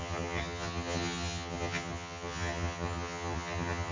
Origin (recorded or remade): remade